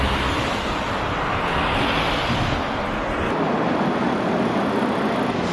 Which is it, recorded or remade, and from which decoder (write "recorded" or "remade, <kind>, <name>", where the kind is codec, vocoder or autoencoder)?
recorded